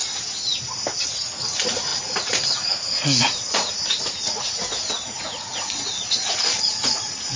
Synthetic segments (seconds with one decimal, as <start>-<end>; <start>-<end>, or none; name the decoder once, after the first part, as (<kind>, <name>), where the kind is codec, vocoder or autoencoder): 1.0-7.4 (vocoder, Vocos)